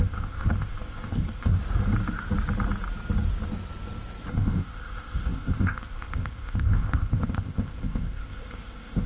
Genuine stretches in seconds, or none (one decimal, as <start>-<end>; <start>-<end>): 1.6-4.3